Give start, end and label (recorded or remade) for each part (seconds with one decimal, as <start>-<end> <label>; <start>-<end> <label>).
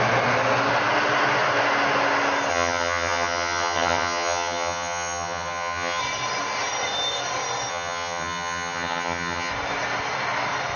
0.0-2.5 recorded; 2.5-6.0 remade; 6.0-7.7 recorded; 7.7-9.5 remade; 9.5-10.8 recorded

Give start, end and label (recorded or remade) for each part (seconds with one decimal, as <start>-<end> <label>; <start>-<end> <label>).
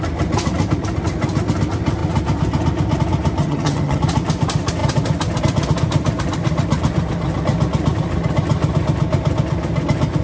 0.0-3.4 recorded; 3.4-4.0 remade; 4.0-10.2 recorded